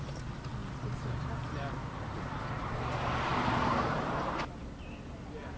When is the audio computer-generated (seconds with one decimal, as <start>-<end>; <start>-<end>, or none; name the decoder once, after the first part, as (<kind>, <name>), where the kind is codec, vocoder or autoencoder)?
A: none